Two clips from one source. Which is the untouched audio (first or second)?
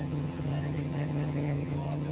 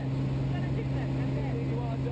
second